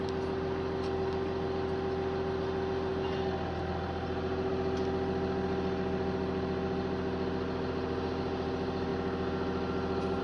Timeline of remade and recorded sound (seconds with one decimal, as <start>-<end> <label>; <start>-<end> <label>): 0.0-10.2 recorded

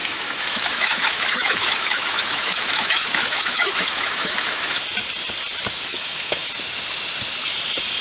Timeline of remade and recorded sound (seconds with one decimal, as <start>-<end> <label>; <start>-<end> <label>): 0.0-4.8 remade; 4.8-5.9 recorded; 5.9-6.5 remade; 6.5-8.0 recorded

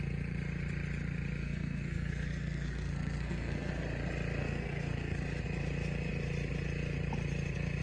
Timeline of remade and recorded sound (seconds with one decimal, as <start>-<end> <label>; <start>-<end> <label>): 0.0-1.4 recorded; 1.4-3.7 remade; 3.7-4.4 recorded; 4.4-5.2 remade; 5.2-7.8 recorded

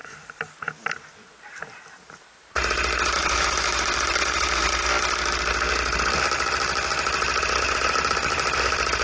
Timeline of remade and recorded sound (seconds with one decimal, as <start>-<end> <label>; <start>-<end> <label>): 0.0-1.6 recorded; 1.6-4.7 remade; 4.7-6.1 recorded; 6.1-6.9 remade; 6.9-7.4 recorded; 7.4-9.0 remade

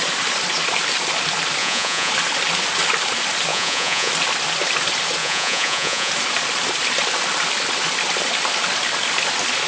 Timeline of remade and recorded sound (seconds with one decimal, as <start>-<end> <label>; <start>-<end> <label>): 0.0-1.6 recorded; 1.6-2.1 remade; 2.1-3.5 recorded; 3.5-4.1 remade; 4.1-5.2 recorded; 5.2-6.1 remade; 6.1-9.7 recorded